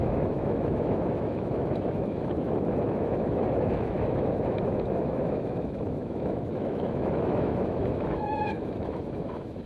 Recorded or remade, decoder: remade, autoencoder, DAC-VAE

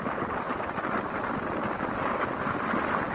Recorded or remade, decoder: recorded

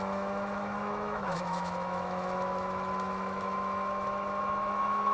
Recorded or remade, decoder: remade, autoencoder, DAC-VAE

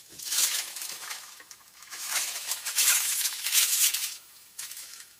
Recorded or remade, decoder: remade, autoencoder, DAC-VAE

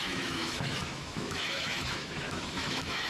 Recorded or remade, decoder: remade, autoencoder, DAC-VAE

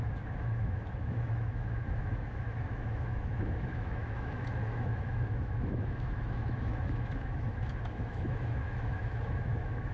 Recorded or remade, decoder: remade, autoencoder, DAC-VAE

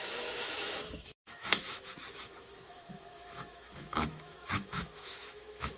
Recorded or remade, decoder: remade, autoencoder, DAC-VAE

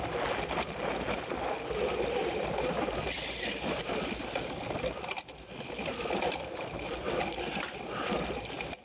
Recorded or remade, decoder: recorded